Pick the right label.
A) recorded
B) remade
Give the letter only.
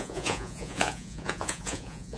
B